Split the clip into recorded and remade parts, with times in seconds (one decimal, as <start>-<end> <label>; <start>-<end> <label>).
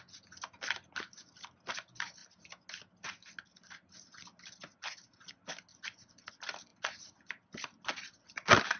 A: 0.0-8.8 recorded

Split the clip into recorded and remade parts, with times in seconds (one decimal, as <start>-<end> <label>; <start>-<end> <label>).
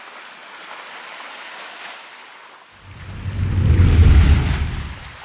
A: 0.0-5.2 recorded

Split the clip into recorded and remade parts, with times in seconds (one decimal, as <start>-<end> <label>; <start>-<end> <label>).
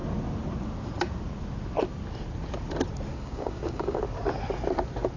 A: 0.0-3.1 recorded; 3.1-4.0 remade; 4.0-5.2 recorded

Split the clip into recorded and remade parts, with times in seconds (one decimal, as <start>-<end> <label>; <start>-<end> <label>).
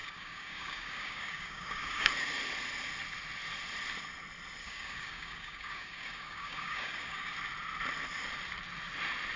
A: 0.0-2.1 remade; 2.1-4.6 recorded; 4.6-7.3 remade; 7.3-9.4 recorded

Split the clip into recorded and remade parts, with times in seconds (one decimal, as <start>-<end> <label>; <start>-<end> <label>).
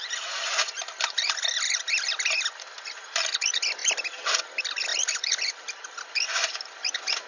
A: 0.0-7.3 recorded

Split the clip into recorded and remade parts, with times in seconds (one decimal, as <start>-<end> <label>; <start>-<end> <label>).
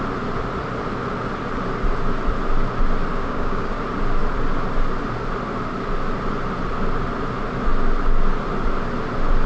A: 0.0-3.1 recorded; 3.1-3.7 remade; 3.7-9.5 recorded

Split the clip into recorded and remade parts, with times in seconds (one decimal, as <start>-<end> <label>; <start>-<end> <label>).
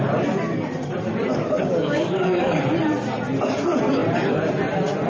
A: 0.0-1.3 recorded; 1.3-2.6 remade; 2.6-5.1 recorded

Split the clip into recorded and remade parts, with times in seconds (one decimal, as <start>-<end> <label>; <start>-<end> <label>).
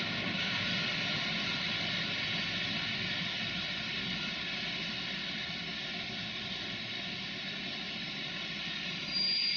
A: 0.0-0.7 remade; 0.7-9.6 recorded